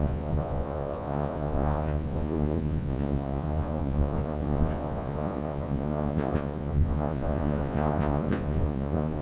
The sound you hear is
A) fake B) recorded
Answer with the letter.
A